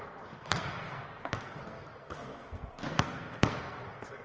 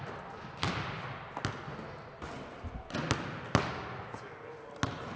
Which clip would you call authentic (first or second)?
second